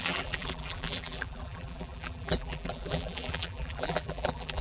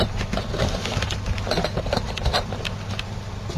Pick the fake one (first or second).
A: first